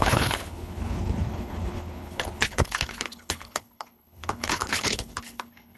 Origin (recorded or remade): remade